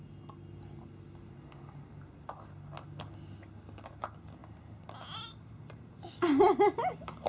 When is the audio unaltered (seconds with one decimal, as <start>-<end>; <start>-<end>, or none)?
0.0-7.3